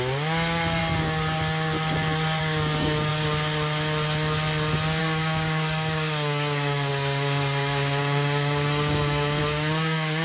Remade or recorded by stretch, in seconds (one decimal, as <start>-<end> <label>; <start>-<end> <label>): 0.0-0.8 remade; 0.8-2.4 recorded; 2.4-3.1 remade; 3.1-5.0 recorded; 5.0-10.2 remade